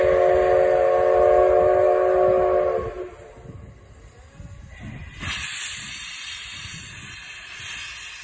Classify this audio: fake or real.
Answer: real